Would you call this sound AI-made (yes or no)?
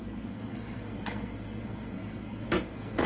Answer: yes